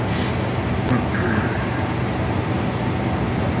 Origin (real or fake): real